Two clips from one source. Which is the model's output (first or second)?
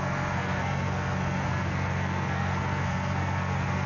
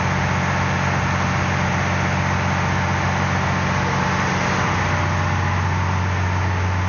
first